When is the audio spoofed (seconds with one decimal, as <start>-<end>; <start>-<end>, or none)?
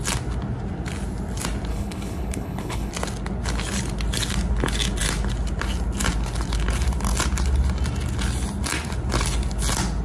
1.7-2.9